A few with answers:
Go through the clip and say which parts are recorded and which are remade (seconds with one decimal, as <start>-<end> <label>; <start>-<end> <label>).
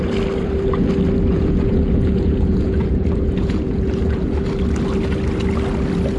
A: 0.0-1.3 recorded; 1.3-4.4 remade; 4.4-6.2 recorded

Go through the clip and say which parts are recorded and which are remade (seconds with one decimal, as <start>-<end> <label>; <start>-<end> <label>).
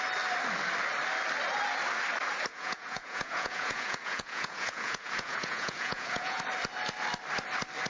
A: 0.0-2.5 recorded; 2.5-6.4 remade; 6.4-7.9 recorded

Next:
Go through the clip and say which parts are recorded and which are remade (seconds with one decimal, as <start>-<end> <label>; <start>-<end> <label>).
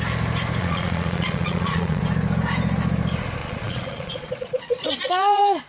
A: 0.0-0.6 recorded; 0.6-2.0 remade; 2.0-3.4 recorded; 3.4-5.7 remade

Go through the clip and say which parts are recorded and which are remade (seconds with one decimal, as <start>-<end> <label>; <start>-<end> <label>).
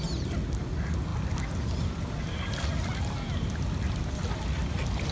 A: 0.0-5.1 recorded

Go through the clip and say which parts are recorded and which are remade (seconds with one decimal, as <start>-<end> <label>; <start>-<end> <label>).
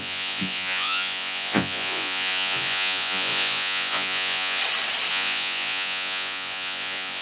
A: 0.0-4.6 remade; 4.6-5.1 recorded; 5.1-7.2 remade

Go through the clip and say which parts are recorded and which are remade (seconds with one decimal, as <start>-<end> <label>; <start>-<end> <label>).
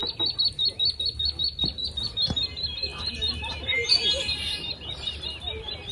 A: 0.0-5.9 recorded